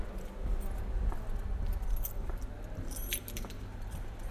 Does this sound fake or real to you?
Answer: real